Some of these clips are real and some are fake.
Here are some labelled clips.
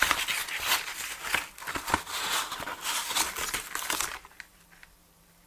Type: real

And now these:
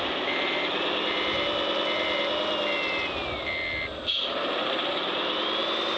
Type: real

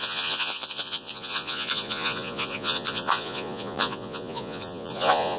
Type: fake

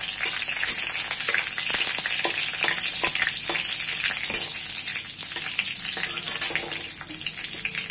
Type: real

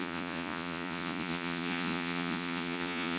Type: fake